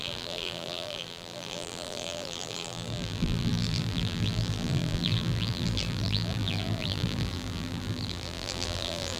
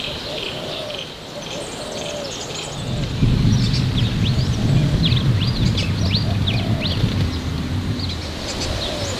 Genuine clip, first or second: second